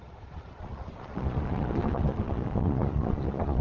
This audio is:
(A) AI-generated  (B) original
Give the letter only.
A